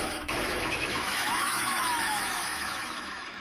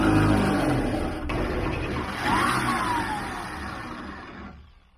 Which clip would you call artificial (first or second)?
first